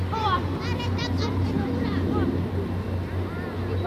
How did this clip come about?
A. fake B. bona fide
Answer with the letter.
B